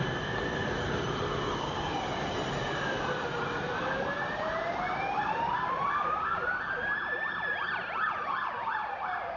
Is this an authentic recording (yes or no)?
yes